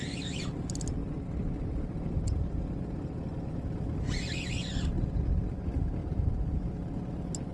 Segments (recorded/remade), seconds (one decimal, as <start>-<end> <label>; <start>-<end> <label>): 0.0-1.0 recorded; 1.0-2.6 remade; 2.6-6.0 recorded; 6.0-6.7 remade; 6.7-7.5 recorded